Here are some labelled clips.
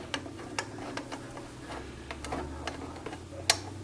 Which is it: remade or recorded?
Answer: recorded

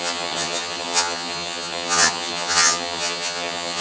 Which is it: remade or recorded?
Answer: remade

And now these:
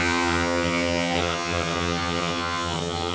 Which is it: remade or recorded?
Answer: remade